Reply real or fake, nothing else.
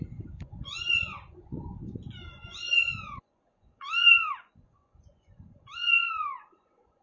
fake